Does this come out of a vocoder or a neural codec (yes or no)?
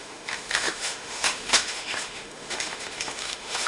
yes